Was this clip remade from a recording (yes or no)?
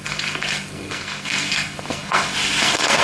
yes